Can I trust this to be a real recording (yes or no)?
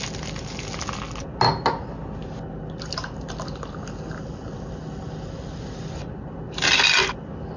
yes